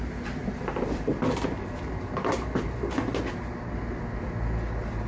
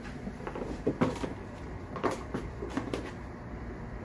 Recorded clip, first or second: first